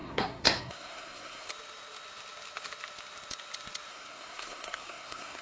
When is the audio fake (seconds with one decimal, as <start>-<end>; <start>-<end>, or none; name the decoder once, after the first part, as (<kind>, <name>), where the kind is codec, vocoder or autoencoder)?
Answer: 0.0-1.5 (codec, SNAC); 3.9-5.4